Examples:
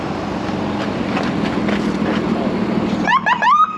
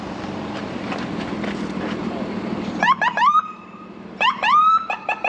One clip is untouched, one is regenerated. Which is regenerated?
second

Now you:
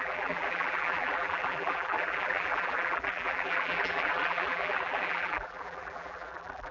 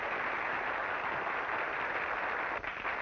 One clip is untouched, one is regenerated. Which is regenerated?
first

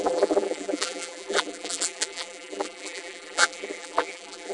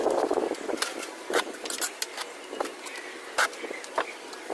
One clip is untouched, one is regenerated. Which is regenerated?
first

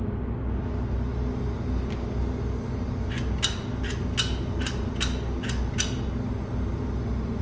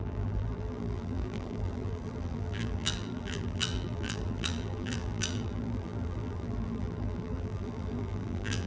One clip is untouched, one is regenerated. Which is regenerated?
second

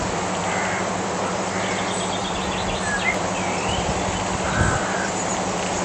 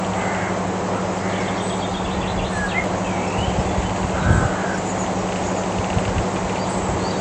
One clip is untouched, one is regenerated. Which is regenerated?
first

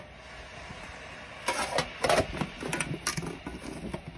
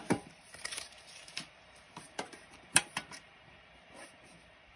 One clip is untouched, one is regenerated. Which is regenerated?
second